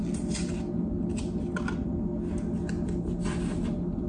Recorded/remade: recorded